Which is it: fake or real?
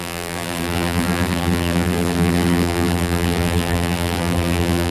fake